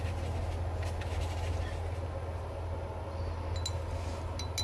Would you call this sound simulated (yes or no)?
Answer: no